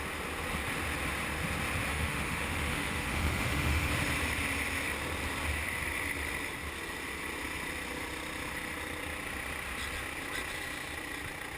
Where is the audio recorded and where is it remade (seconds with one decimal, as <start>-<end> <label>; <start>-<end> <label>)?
0.0-1.9 recorded; 1.9-3.9 remade; 3.9-11.6 recorded